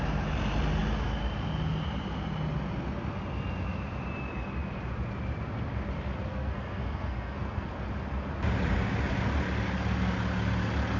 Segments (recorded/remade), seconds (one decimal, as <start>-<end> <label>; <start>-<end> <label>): 0.0-6.3 recorded; 6.3-7.7 remade; 7.7-11.0 recorded